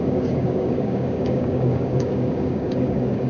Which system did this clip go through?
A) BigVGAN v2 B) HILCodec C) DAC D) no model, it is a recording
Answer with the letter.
C